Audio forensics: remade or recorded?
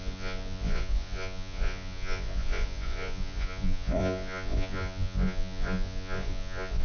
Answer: remade